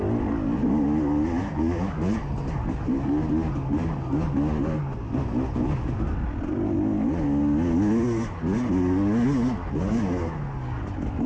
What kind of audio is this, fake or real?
real